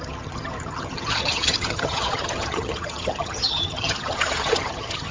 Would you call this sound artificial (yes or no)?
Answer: yes